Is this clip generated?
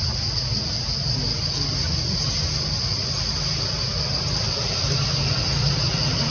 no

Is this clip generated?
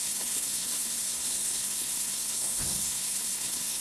yes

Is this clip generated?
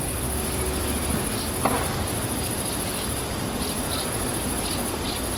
no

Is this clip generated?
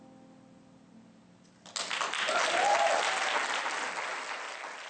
no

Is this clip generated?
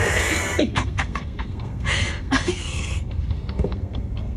yes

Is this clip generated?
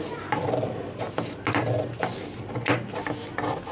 no